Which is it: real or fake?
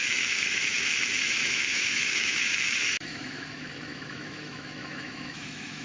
fake